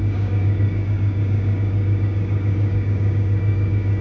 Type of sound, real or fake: fake